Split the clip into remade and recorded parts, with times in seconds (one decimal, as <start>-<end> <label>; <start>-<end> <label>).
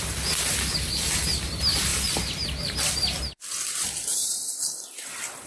0.0-1.9 recorded; 1.9-5.5 remade